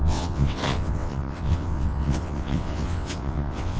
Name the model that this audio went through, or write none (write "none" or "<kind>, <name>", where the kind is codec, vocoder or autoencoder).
vocoder, WaveNeXt